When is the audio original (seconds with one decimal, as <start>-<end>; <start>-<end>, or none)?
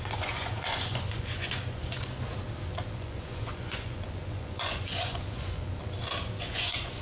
2.3-2.9; 5.8-6.4